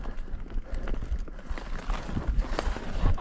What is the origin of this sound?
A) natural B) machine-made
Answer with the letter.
A